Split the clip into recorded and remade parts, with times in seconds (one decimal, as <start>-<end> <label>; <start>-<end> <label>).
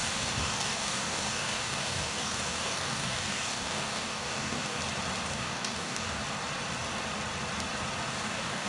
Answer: 0.0-4.8 remade; 4.8-5.3 recorded; 5.3-6.2 remade; 6.2-8.1 recorded; 8.1-8.7 remade